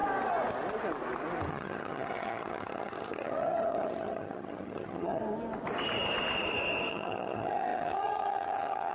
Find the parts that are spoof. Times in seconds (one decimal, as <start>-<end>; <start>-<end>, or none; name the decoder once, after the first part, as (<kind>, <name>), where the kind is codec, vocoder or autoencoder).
1.5-5.2 (vocoder, HiFi-GAN); 6.9-8.9